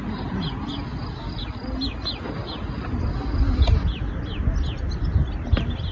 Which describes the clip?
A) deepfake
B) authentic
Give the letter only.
B